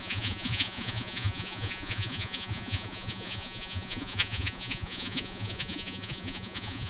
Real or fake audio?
fake